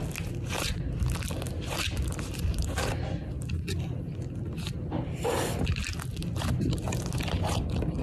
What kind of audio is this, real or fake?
real